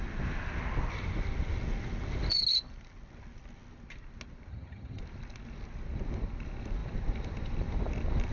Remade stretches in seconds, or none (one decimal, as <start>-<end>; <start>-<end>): 4.5-5.0